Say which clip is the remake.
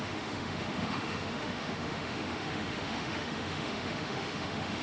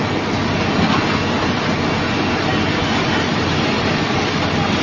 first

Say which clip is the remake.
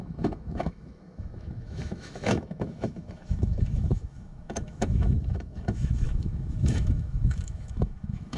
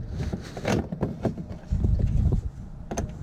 first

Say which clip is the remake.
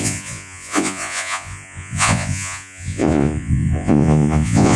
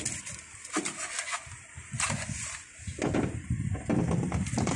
first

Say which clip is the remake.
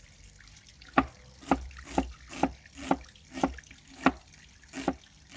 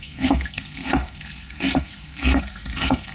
second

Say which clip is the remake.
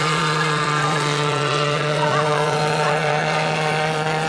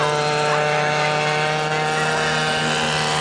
first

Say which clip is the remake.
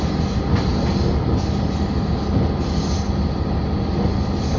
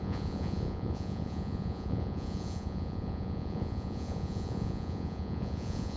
second